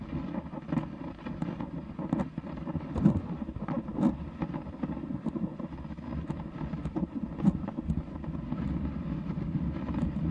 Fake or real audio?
real